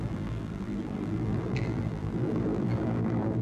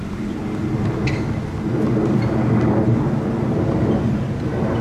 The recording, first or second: second